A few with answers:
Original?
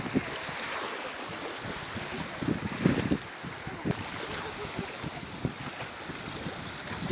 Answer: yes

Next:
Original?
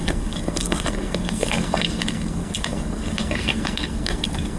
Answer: no